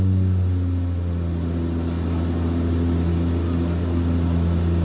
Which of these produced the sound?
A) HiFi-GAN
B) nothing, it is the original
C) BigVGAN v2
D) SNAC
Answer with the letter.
B